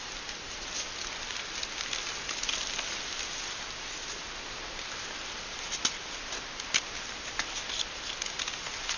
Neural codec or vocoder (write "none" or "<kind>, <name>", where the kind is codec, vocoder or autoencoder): none